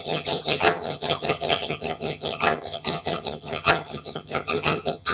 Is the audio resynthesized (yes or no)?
yes